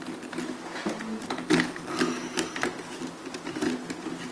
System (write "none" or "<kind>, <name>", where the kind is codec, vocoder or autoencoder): none